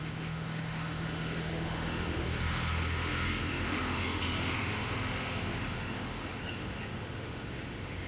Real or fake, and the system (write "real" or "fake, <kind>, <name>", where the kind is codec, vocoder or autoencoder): fake, autoencoder, DAC-VAE